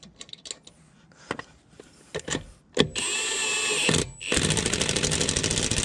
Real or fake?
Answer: real